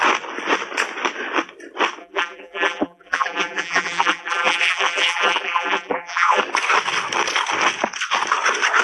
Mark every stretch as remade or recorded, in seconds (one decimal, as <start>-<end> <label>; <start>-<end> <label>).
0.0-2.0 recorded; 2.0-6.4 remade; 6.4-8.8 recorded